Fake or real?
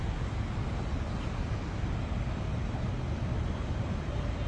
real